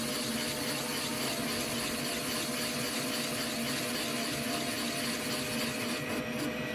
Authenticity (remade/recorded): recorded